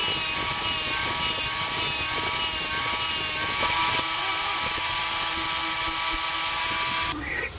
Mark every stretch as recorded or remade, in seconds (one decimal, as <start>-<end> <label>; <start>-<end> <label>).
0.0-7.6 recorded